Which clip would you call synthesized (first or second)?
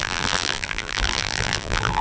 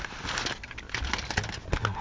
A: first